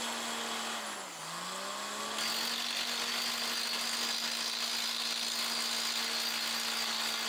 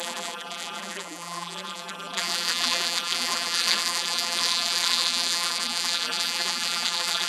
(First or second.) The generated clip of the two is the second